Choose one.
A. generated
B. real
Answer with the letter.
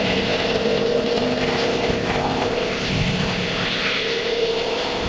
A